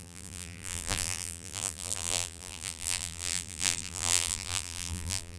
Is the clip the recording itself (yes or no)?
no